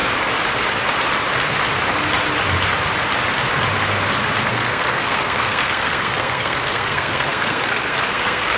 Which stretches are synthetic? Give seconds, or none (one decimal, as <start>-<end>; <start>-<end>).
4.5-8.6